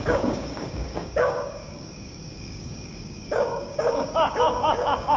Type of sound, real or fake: fake